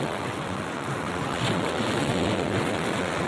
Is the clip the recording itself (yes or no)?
no